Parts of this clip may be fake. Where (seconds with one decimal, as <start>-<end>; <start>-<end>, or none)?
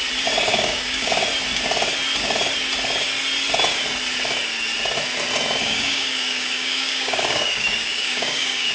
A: 0.5-1.1; 5.6-8.7